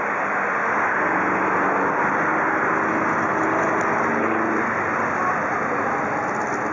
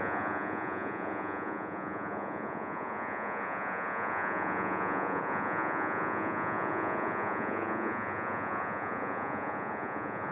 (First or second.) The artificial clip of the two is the second